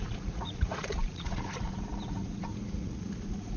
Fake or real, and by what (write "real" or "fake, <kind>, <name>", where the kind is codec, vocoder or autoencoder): fake, vocoder, Vocos